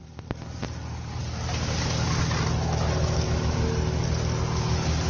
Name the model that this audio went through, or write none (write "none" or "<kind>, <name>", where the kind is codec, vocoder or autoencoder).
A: none